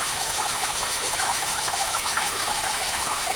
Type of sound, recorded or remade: remade